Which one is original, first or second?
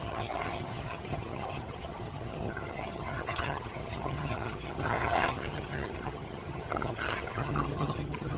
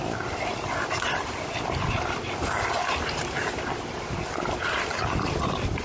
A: second